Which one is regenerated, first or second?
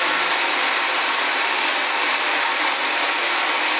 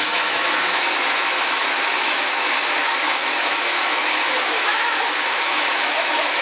second